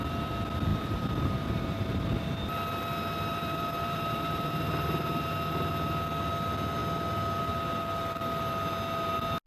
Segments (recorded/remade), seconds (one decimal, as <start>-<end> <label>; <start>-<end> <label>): 0.0-0.7 recorded; 0.7-2.1 remade; 2.1-3.3 recorded; 3.3-5.7 remade; 5.7-9.5 recorded